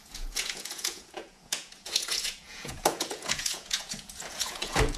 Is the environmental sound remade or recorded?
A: remade